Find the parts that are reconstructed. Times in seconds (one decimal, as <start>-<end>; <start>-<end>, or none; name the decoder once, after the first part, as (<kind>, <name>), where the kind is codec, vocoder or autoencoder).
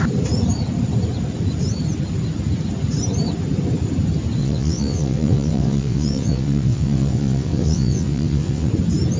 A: 4.4-8.7 (vocoder, WaveNeXt)